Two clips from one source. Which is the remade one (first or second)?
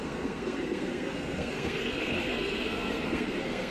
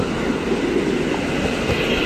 first